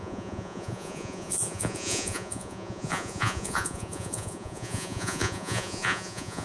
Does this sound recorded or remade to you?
remade